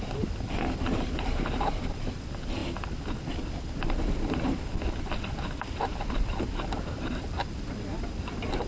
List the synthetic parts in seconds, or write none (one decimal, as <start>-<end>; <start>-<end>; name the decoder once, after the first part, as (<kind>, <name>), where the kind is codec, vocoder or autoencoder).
none